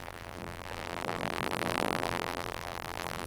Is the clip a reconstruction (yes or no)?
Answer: yes